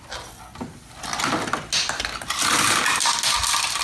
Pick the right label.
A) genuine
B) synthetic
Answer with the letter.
A